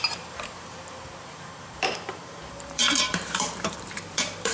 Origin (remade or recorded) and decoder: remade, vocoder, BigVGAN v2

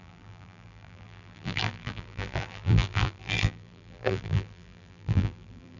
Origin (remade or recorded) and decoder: remade, vocoder, BigVGAN v2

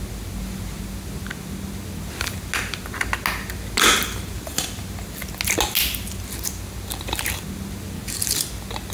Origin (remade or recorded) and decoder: recorded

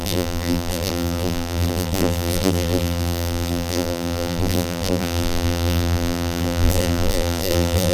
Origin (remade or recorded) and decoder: remade, vocoder, BigVGAN v2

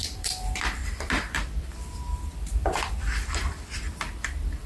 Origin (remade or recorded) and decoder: remade, vocoder, BigVGAN v2